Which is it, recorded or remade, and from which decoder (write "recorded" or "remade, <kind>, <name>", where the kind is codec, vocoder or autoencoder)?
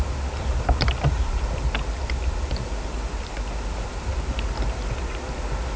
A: recorded